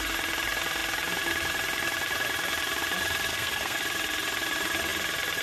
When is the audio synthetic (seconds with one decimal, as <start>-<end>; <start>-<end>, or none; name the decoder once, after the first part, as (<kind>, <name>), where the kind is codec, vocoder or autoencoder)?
3.3-3.8 (codec, SNAC)